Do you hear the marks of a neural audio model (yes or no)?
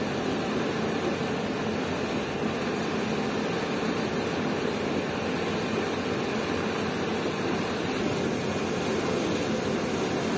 no